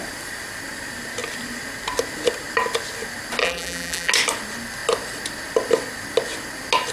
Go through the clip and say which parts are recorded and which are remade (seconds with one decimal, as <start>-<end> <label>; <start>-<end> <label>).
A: 0.0-3.4 recorded; 3.4-4.1 remade; 4.1-6.9 recorded